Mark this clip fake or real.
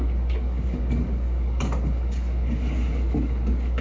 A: fake